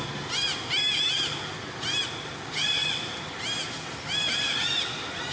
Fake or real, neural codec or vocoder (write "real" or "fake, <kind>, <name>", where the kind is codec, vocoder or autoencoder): real